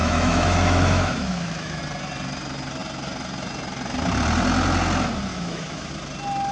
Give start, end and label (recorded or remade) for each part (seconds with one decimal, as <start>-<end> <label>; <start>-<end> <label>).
0.0-1.8 remade; 1.8-5.3 recorded; 5.3-5.9 remade; 5.9-6.5 recorded